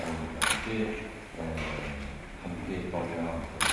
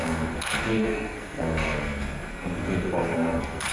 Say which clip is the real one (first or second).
first